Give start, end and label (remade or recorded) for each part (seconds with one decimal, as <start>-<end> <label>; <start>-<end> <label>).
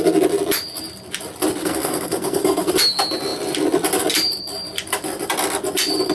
0.0-1.6 recorded; 1.6-2.7 remade; 2.7-6.1 recorded